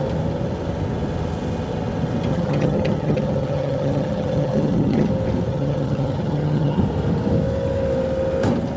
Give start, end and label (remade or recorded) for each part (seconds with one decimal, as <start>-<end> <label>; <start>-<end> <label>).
0.0-2.3 recorded; 2.3-5.1 remade; 5.1-5.5 recorded; 5.5-6.8 remade; 6.8-8.8 recorded